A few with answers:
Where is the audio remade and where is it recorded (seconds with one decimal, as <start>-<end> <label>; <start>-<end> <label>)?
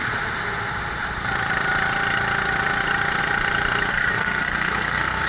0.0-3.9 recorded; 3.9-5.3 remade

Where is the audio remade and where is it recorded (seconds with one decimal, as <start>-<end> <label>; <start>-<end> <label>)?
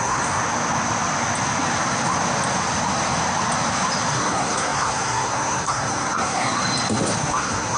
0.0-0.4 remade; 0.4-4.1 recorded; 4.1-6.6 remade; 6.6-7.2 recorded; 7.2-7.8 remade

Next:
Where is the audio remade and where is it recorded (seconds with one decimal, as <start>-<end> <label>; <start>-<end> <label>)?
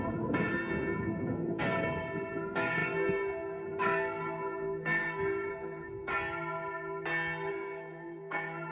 0.0-6.1 remade; 6.1-7.5 recorded; 7.5-8.7 remade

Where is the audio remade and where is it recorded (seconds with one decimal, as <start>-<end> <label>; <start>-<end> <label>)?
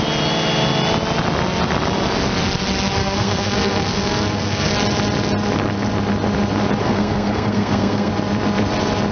0.0-3.0 recorded; 3.0-4.7 remade; 4.7-6.8 recorded; 6.8-8.1 remade; 8.1-9.1 recorded